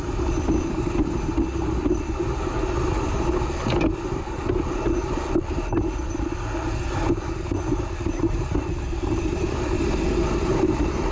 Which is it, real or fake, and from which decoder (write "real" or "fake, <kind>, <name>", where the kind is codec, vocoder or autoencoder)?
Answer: real